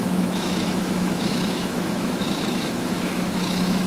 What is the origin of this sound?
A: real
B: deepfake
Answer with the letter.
B